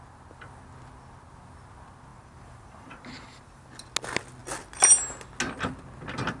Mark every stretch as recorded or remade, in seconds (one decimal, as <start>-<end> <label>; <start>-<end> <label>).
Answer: 0.0-2.1 recorded; 2.1-3.7 remade; 3.7-6.4 recorded